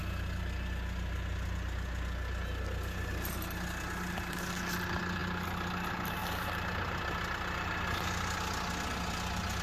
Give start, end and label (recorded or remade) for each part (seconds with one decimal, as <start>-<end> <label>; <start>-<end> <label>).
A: 0.0-9.6 recorded